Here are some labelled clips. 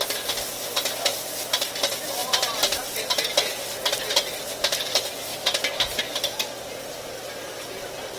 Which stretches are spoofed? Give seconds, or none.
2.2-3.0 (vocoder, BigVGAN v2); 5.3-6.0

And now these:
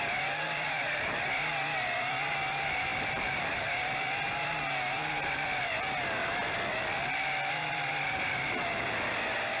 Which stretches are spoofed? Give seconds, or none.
0.0-9.6 (vocoder, BigVGAN v2)

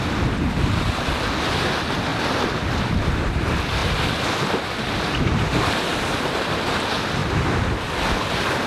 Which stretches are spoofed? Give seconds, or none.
2.1-3.4 (vocoder, BigVGAN v2); 7.2-8.7

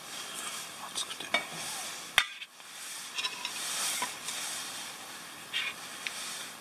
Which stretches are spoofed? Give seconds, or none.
none

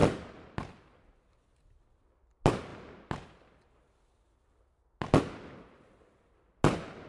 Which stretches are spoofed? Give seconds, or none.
none

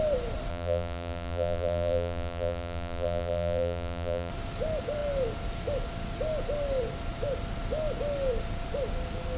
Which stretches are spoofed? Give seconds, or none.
0.5-4.3 (vocoder, BigVGAN v2)

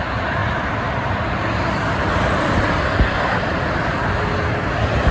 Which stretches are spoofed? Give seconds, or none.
none

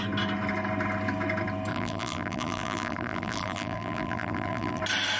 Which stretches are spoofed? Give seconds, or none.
1.7-4.8 (vocoder, BigVGAN v2)